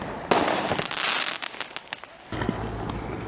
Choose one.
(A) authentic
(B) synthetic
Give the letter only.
A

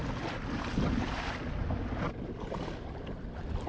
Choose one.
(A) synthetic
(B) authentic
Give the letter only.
B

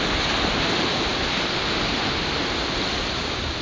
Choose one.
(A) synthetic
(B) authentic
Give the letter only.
B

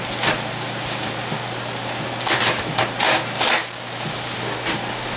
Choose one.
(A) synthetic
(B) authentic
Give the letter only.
B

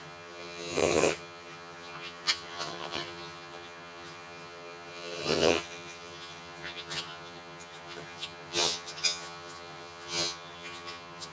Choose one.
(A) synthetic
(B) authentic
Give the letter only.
A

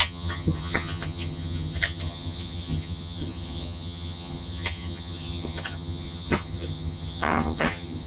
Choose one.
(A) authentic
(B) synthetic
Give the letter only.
B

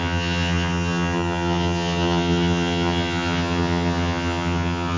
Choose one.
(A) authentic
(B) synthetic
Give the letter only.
B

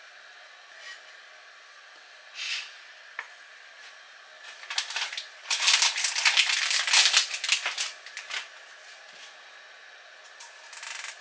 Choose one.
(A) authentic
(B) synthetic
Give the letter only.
A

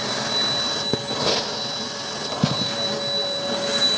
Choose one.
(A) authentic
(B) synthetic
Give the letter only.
A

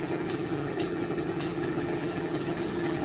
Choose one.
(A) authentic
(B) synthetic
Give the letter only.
B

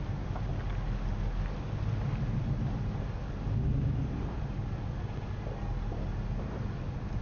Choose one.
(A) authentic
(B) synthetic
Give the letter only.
A